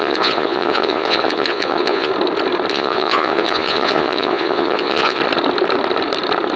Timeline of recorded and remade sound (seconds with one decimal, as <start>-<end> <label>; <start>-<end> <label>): 0.0-2.1 remade; 2.1-2.7 recorded; 2.7-5.2 remade; 5.2-6.6 recorded